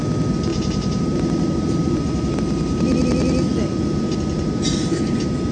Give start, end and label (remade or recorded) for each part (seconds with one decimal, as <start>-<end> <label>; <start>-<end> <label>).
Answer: 0.0-0.5 recorded; 0.5-3.8 remade; 3.8-5.5 recorded